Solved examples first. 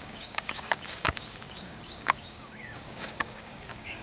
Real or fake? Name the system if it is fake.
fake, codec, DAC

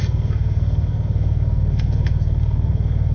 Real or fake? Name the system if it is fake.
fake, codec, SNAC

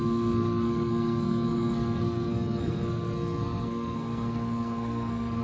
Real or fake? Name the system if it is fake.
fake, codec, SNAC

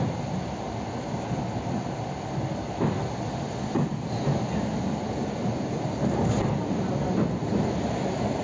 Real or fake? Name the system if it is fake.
real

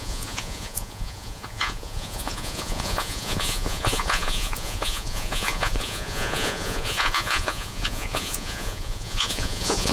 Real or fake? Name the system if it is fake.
fake, vocoder, Vocos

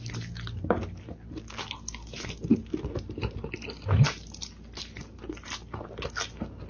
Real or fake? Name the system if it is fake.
real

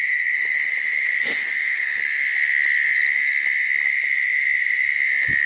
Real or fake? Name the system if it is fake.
real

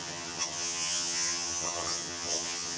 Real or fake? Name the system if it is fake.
fake, vocoder, HiFi-GAN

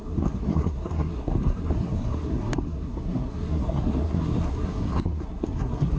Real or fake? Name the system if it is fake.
fake, codec, SNAC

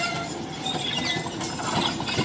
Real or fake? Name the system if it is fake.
real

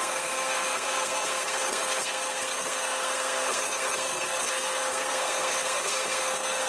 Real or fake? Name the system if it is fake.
fake, codec, SNAC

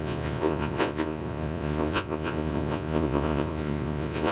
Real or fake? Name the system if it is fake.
fake, vocoder, Vocos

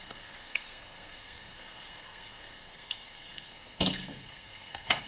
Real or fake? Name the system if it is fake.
fake, codec, SNAC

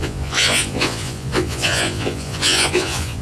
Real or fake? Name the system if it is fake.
fake, vocoder, Vocos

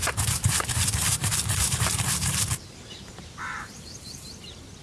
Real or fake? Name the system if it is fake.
fake, vocoder, BigVGAN v2